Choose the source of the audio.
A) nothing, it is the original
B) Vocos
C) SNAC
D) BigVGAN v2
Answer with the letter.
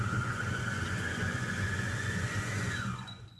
B